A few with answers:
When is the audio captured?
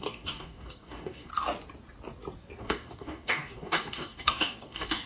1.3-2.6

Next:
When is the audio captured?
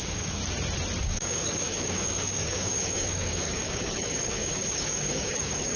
0.4-1.0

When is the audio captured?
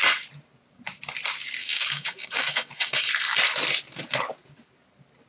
0.0-1.6; 3.1-5.3